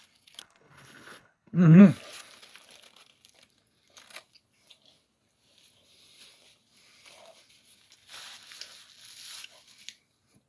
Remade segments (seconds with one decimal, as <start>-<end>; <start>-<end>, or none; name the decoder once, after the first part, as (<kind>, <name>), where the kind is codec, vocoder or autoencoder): 0.4-1.8 (codec, HILCodec)